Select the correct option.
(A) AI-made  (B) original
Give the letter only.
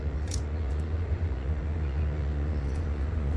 A